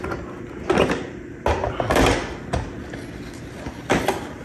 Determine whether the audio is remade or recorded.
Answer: recorded